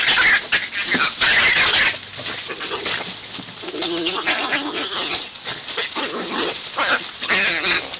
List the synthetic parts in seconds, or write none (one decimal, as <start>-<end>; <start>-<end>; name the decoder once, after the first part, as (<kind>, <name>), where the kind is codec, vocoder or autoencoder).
none